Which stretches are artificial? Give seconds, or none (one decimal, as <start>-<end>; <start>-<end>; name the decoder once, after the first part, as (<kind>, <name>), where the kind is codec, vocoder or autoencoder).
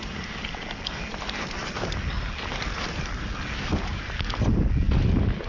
none